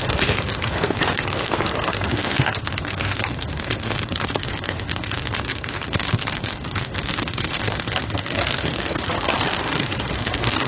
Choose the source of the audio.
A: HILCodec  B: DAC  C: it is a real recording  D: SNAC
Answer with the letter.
D